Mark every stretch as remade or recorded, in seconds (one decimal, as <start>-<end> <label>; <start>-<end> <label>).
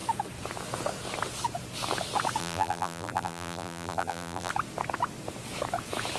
0.0-2.4 recorded; 2.4-4.5 remade; 4.5-6.2 recorded